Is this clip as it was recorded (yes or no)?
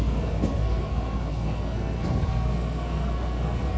no